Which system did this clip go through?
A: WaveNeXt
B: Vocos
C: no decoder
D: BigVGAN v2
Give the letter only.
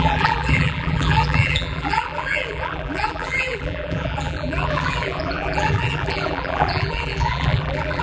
D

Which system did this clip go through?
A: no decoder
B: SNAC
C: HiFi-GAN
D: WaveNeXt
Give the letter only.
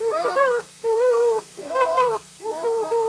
B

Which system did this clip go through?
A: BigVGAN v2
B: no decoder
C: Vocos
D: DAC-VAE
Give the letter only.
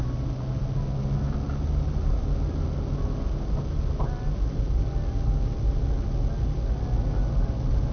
B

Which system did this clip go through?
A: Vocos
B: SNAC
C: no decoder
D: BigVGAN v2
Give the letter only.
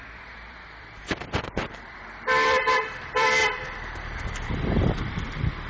D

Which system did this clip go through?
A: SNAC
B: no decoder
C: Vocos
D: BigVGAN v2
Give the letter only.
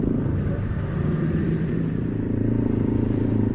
D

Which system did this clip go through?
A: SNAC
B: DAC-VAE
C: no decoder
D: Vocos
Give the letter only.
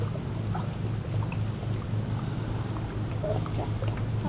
C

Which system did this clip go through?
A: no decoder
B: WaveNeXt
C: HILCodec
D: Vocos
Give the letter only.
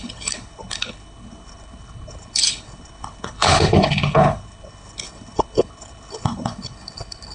C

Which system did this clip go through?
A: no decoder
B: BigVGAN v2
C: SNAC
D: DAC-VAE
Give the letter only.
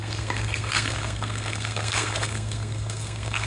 C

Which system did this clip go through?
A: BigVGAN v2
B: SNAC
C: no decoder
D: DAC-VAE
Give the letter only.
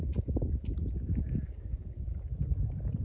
C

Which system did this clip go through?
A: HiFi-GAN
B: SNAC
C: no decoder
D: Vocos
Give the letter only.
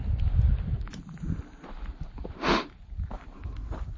C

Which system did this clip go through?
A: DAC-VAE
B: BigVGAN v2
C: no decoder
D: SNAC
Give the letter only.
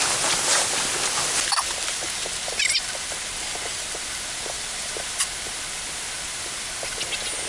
C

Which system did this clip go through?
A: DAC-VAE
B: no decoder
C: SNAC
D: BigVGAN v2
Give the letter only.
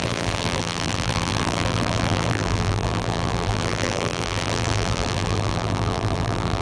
D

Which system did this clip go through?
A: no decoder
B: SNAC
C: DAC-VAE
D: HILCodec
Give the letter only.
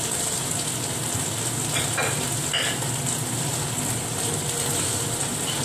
A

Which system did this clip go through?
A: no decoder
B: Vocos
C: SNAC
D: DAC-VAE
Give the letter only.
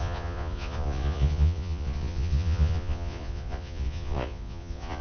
B